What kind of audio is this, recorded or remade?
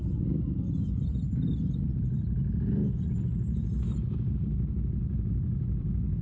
recorded